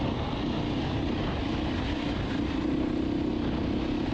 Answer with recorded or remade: recorded